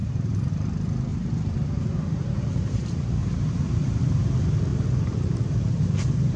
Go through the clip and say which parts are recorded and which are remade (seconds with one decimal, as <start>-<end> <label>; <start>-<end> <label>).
0.0-0.5 remade; 0.5-1.1 recorded; 1.1-3.5 remade; 3.5-6.4 recorded